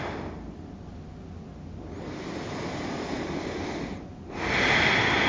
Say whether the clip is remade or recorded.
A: recorded